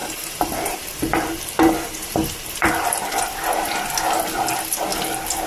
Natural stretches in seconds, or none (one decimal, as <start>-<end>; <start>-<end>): 3.2-5.5